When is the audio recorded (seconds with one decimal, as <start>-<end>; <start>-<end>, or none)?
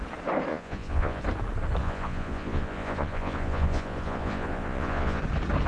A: 0.0-0.5; 1.2-1.8; 5.2-5.7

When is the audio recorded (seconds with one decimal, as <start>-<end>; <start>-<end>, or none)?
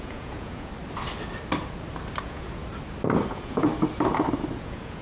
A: 0.7-2.2; 2.6-3.3; 3.7-4.6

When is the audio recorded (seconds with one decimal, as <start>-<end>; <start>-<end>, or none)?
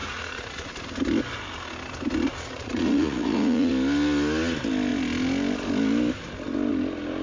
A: 0.7-2.3; 3.7-7.2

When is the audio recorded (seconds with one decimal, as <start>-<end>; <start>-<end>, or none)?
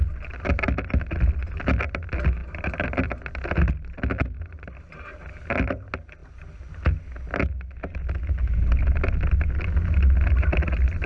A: 0.0-11.1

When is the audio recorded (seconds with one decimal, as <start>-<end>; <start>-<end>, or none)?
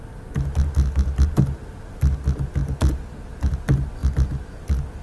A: 0.0-5.0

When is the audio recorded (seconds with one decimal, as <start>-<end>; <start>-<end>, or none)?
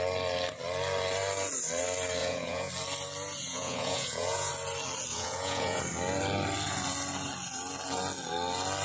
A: 0.0-2.2; 2.7-3.5; 4.5-5.1; 5.8-8.8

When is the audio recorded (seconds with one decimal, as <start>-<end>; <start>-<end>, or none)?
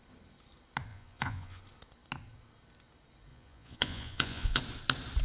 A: 0.0-0.9; 1.6-3.3; 4.6-5.2